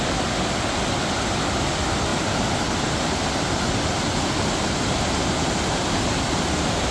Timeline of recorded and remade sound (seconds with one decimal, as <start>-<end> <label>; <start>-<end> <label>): 0.0-6.9 recorded